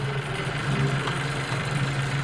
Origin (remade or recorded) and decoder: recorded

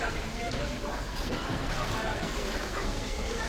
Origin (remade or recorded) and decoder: remade, codec, SNAC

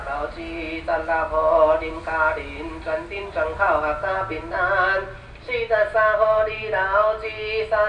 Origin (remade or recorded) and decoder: recorded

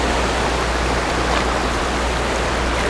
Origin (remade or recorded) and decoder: recorded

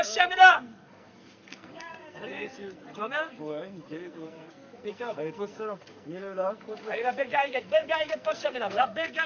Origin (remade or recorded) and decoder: remade, codec, SNAC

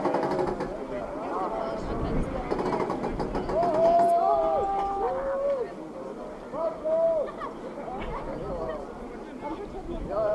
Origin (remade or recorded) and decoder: recorded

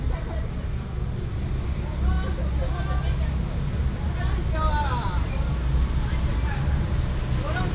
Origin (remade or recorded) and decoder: recorded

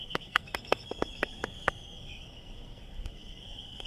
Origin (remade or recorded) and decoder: remade, codec, SNAC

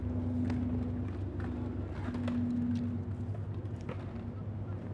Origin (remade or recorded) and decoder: recorded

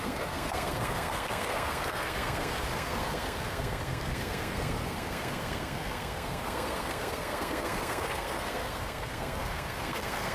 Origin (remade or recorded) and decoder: remade, codec, SNAC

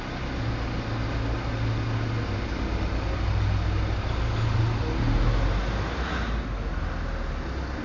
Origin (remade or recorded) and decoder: recorded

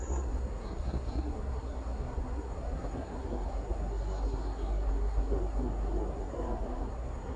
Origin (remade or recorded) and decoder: remade, codec, SNAC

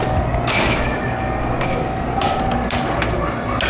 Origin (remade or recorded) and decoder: recorded